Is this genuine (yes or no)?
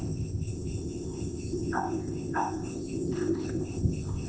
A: no